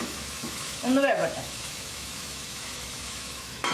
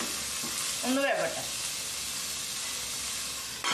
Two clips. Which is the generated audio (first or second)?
first